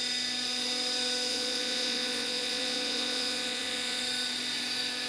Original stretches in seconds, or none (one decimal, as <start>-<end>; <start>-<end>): 0.0-1.3; 4.0-5.1

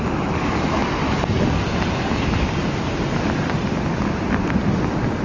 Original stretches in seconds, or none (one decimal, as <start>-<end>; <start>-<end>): 0.0-5.2

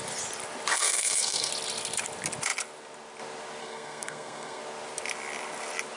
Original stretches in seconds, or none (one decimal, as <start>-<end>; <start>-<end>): 0.0-0.7; 1.5-3.6; 4.6-6.0

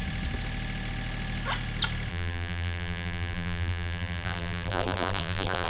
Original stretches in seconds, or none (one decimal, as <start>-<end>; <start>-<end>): 0.0-2.1

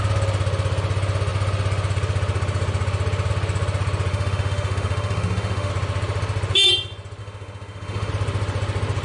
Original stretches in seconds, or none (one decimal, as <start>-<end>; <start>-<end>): 0.0-4.1; 5.7-7.2; 8.1-9.0

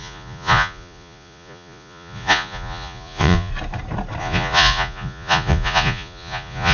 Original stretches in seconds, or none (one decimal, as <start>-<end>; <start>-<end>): 3.5-4.2

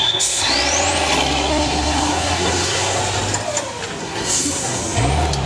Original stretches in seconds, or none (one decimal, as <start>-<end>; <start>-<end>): 0.5-1.5; 3.0-4.0; 4.8-5.5

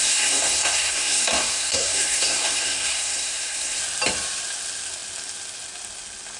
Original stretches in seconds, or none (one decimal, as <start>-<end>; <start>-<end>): 3.8-6.4